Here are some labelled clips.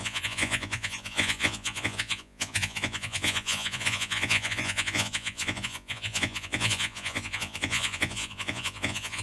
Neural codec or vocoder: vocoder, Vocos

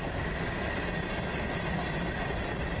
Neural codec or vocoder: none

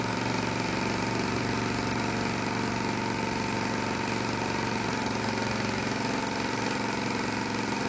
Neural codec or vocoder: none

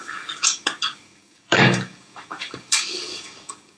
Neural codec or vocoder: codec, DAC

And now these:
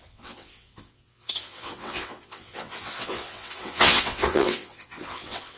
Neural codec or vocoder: vocoder, WaveNeXt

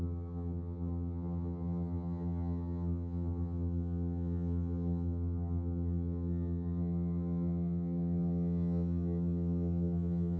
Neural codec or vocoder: vocoder, HiFi-GAN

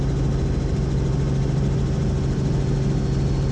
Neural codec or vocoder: none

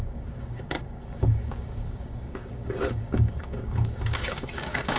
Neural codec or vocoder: codec, DAC